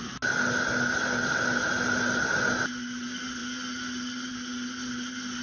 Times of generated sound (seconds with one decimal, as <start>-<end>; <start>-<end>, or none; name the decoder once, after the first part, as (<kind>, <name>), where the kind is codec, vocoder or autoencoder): none